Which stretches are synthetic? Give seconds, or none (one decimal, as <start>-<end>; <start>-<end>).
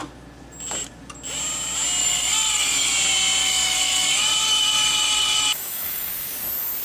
2.0-2.9; 3.4-6.1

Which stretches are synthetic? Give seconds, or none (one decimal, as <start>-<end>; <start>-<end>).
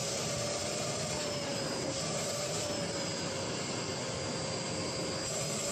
0.6-1.1; 1.5-4.9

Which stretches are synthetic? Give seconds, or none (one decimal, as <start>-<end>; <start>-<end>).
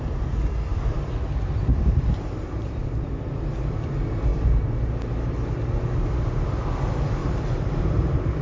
0.7-3.1; 7.2-8.4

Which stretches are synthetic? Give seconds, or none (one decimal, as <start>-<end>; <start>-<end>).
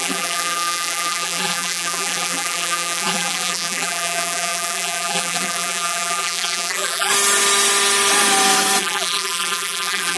0.0-7.1; 8.8-10.2